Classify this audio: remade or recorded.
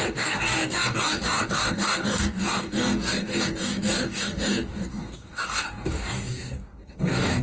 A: remade